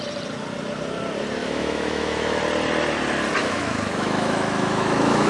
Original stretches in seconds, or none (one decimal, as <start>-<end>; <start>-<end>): 0.0-1.4; 2.4-3.4